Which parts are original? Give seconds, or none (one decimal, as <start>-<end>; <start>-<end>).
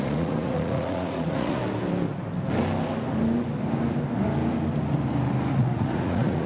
1.6-5.5